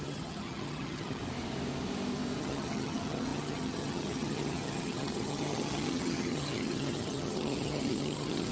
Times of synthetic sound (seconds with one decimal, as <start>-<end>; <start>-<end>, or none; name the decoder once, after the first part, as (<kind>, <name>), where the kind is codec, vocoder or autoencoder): 0.0-1.2 (vocoder, HiFi-GAN); 2.4-8.5